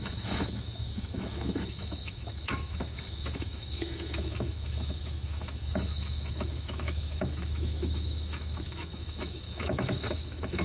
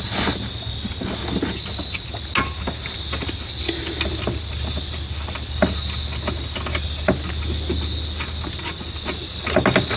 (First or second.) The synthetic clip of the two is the first